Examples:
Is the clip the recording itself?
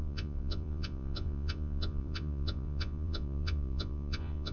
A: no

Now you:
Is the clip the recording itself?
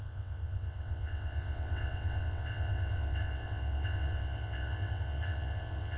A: no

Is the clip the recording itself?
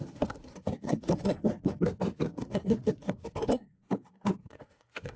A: no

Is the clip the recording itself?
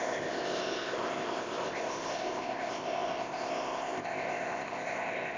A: no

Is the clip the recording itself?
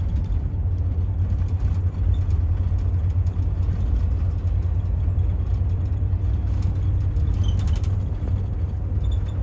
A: yes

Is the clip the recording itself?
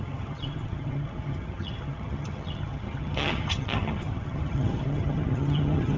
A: no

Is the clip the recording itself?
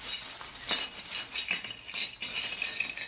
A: yes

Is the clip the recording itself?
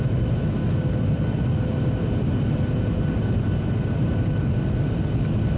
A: yes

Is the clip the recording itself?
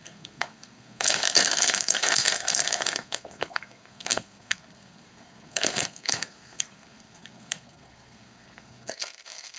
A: no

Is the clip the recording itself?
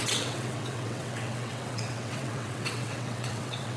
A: no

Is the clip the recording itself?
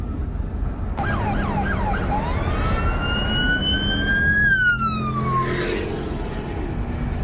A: yes